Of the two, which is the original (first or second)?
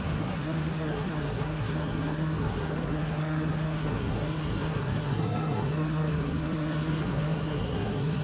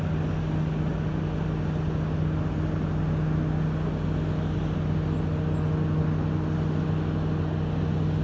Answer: second